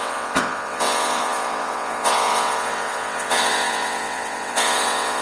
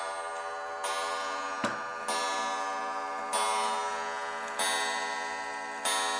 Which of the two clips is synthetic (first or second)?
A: first